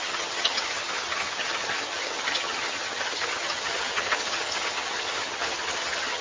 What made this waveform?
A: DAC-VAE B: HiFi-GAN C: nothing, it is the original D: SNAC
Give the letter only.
B